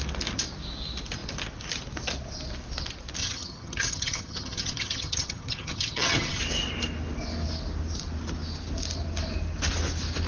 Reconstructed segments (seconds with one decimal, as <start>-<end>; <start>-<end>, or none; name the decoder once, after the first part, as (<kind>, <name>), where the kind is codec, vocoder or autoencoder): 3.2-6.4 (vocoder, HiFi-GAN)